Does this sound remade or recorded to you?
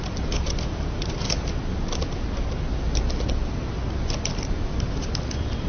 recorded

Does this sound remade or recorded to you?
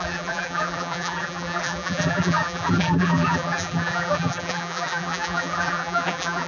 remade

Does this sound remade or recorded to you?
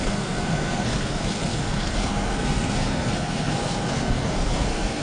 remade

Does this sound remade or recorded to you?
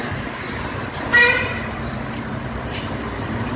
recorded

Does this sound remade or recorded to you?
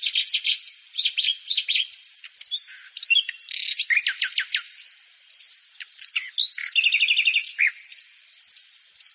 recorded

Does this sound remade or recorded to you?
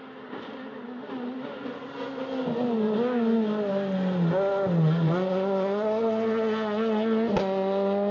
recorded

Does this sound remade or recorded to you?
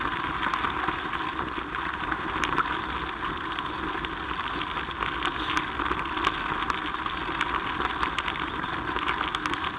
recorded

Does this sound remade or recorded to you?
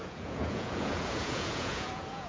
remade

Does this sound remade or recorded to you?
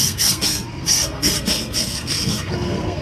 remade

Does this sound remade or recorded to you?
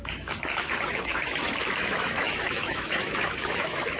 remade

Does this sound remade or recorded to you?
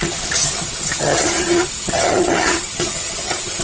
remade